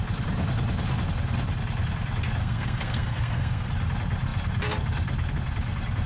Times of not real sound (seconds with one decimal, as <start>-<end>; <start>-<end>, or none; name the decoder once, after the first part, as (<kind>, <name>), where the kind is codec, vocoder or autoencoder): 2.4-3.7 (codec, SNAC)